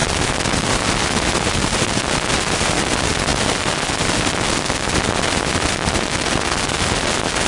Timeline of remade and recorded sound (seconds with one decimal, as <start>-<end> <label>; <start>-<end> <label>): 0.0-7.5 recorded